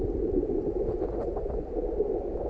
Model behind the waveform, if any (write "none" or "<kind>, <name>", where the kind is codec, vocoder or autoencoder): none